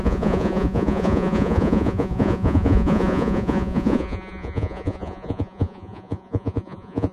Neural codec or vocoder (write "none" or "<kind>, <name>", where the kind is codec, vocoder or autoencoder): vocoder, Vocos